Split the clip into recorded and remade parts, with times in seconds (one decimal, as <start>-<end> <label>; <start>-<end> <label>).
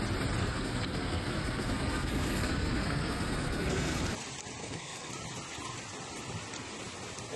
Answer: 0.0-0.4 recorded; 0.4-4.0 remade; 4.0-4.6 recorded; 4.6-5.1 remade; 5.1-7.4 recorded